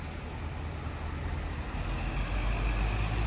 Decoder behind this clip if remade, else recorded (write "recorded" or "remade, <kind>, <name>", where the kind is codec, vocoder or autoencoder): recorded